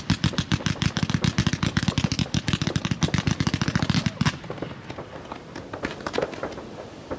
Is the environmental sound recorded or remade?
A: recorded